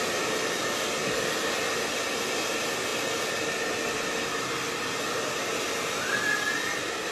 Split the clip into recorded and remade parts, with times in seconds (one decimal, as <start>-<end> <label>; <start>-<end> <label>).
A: 0.0-7.1 recorded